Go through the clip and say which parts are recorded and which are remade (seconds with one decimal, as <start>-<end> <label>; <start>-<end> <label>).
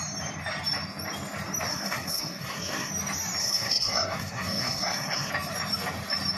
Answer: 0.0-1.7 recorded; 1.7-2.9 remade; 2.9-3.4 recorded; 3.4-5.3 remade; 5.3-6.4 recorded